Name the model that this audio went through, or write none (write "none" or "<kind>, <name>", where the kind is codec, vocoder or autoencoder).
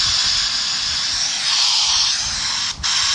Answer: none